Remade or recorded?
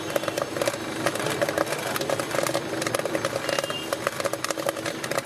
recorded